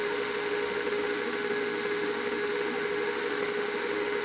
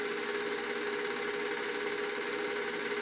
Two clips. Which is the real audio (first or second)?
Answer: second